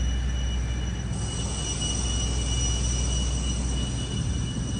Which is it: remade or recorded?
recorded